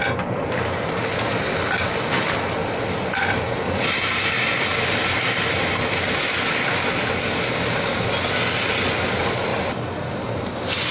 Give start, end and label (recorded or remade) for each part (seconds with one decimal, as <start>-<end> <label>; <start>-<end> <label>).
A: 0.0-10.9 recorded